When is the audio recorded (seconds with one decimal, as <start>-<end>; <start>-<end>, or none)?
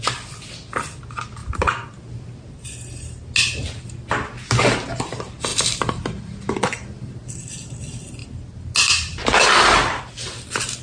0.0-10.8